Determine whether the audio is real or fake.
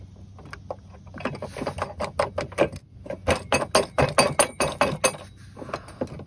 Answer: real